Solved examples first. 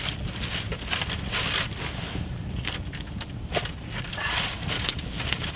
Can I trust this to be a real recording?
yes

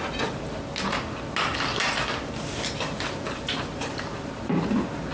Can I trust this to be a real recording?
yes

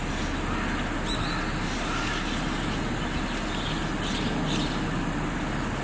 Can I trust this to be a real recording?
yes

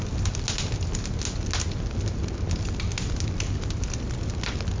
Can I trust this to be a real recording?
yes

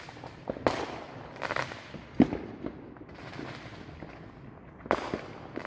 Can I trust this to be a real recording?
yes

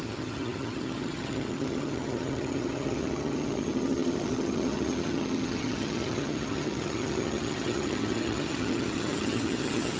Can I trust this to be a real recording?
no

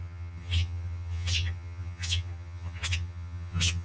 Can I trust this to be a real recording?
no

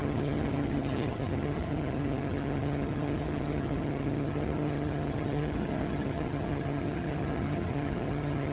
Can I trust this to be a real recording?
no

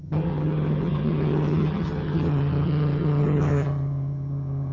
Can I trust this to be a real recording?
no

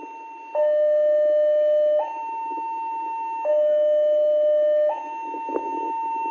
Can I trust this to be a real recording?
yes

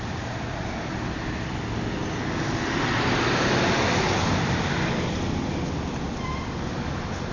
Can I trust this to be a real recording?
yes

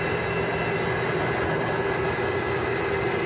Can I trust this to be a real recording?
yes